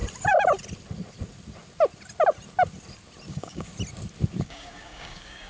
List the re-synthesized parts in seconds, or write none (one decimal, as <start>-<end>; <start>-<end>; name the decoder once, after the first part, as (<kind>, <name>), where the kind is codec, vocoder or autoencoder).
3.3-3.7 (codec, DAC); 4.4-5.5